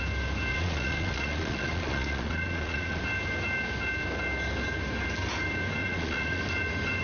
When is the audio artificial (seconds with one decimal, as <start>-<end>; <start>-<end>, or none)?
0.5-3.0; 5.8-6.4